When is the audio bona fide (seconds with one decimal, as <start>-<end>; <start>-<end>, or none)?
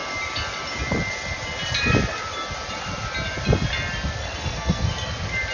0.0-4.2; 4.9-5.5